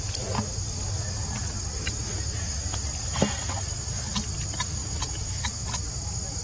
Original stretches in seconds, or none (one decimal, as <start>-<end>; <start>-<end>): 0.0-4.8; 5.4-6.4